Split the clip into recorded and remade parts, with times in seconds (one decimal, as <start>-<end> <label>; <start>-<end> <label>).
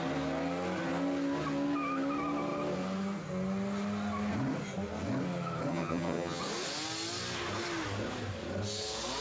0.0-5.7 recorded; 5.7-6.4 remade; 6.4-9.2 recorded